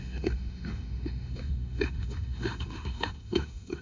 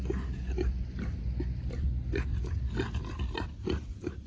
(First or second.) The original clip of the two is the second